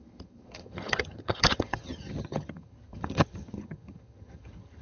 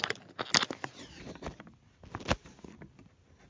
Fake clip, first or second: first